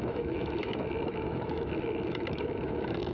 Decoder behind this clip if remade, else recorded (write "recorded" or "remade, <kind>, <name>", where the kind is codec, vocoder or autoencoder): remade, autoencoder, DAC-VAE